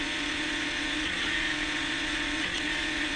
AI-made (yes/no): yes